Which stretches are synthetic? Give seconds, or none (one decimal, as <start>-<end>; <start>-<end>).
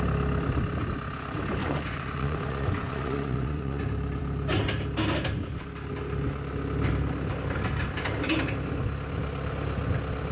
1.6-3.8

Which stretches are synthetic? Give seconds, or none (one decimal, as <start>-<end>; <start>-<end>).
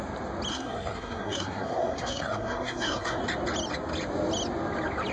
0.5-3.2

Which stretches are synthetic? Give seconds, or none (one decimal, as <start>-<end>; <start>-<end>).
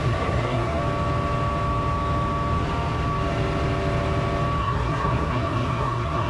0.0-0.8; 4.6-6.3